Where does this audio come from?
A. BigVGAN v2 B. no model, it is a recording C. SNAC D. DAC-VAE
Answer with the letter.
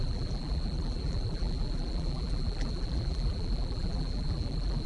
A